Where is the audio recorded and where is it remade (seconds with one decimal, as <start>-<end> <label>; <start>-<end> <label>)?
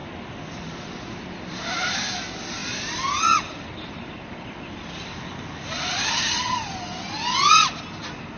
0.0-8.4 recorded